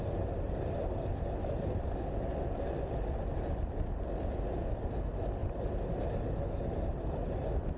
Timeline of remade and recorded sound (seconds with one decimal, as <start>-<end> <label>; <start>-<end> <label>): 0.0-7.8 recorded

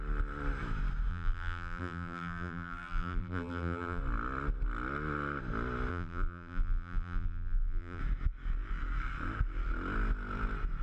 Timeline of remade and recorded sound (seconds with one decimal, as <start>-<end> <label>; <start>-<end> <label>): 0.0-1.1 recorded; 1.1-4.0 remade; 4.0-5.9 recorded; 5.9-8.0 remade; 8.0-10.8 recorded

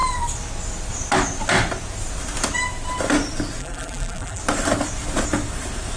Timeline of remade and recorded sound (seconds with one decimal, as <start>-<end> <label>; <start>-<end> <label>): 0.0-3.6 recorded; 3.6-4.4 remade; 4.4-6.0 recorded

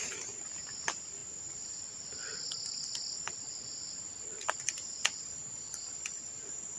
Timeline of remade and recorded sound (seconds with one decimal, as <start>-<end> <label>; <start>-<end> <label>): 0.0-6.8 remade

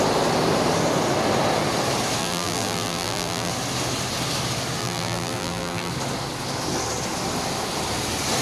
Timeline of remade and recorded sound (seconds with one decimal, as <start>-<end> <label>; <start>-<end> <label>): 0.0-2.2 recorded; 2.2-3.5 remade; 3.5-4.8 recorded; 4.8-5.9 remade; 5.9-8.4 recorded

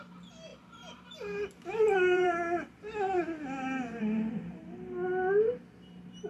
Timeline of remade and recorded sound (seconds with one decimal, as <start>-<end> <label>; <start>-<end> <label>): 0.0-4.6 remade; 4.6-6.3 recorded

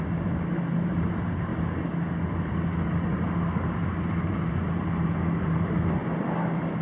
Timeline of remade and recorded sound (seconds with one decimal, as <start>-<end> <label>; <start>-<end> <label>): 0.0-1.5 remade; 1.5-4.0 recorded; 4.0-6.0 remade; 6.0-6.8 recorded